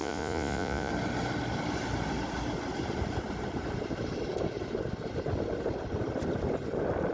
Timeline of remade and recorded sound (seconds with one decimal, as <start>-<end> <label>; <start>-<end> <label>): 0.0-0.9 remade; 0.9-7.1 recorded